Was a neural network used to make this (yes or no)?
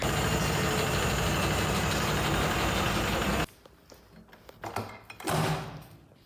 no